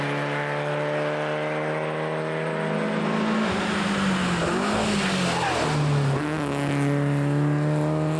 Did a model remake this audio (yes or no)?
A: no